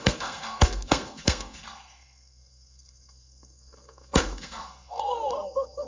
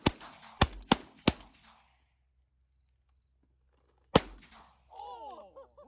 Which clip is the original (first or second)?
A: second